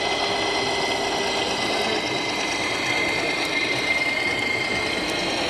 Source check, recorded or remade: recorded